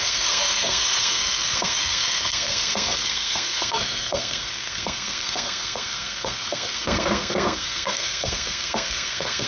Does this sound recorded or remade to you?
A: remade